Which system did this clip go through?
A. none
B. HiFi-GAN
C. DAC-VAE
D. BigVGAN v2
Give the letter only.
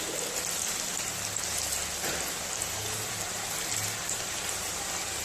A